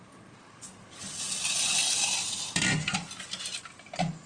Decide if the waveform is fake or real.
real